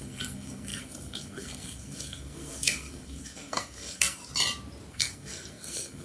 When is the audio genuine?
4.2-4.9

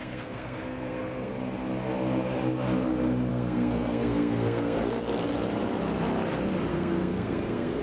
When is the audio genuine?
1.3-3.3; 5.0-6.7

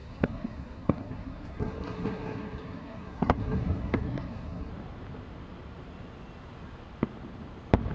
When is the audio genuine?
4.7-7.9

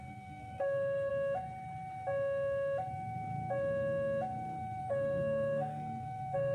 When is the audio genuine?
1.1-4.8